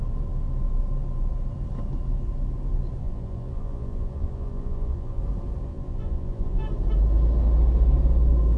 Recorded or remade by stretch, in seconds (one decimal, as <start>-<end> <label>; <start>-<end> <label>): 0.0-3.0 recorded; 3.0-5.2 remade; 5.2-5.7 recorded; 5.7-6.6 remade; 6.6-8.6 recorded